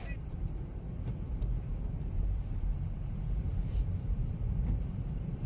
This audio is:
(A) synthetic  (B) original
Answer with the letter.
A